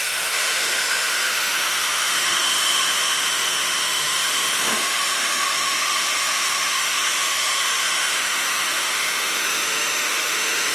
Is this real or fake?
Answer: fake